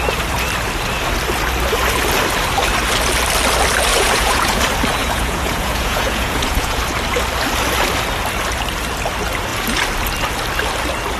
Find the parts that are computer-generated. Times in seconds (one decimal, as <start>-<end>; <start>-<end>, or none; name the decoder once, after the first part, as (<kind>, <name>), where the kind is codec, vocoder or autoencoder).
3.9-4.6 (vocoder, Vocos); 5.0-6.8